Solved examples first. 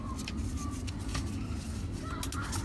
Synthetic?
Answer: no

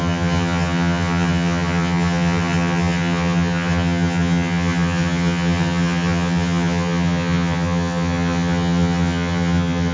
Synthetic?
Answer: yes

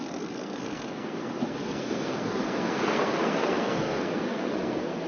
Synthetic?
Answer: yes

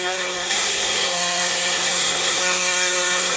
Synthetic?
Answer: yes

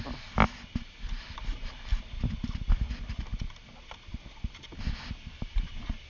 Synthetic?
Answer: no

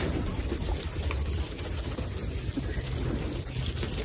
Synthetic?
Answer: no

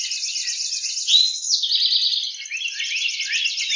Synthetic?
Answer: no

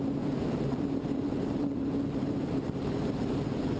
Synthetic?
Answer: yes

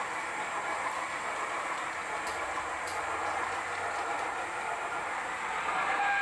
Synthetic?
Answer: yes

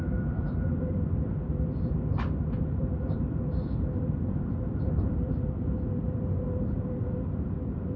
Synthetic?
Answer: yes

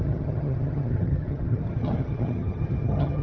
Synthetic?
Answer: yes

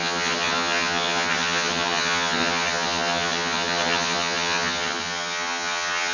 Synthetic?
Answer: yes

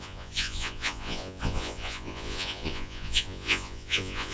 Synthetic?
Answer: yes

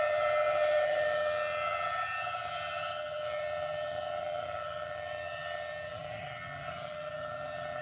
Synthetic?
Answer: yes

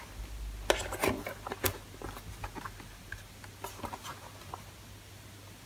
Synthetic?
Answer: no